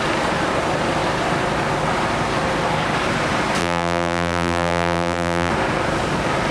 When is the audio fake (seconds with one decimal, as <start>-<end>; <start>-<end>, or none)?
3.6-5.5